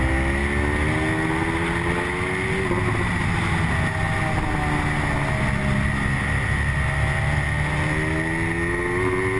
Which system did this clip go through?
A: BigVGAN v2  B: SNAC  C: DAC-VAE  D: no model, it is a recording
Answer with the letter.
D